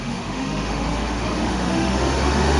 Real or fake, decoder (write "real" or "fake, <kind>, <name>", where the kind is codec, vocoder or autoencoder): fake, autoencoder, DAC-VAE